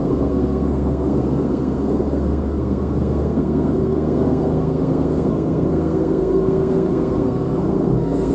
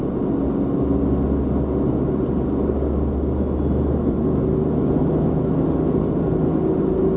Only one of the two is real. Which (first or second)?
second